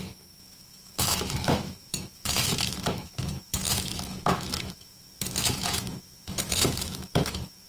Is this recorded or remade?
remade